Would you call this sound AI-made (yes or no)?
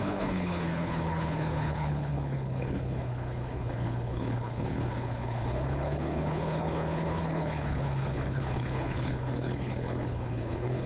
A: yes